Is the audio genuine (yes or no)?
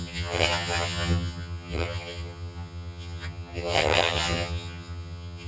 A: no